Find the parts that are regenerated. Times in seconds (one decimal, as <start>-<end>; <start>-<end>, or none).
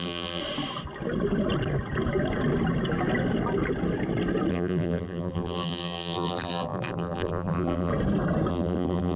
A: 0.0-0.4; 4.5-7.9; 8.5-9.2